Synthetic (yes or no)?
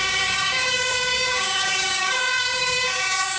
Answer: yes